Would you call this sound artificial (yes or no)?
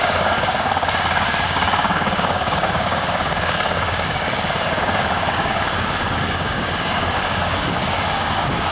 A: yes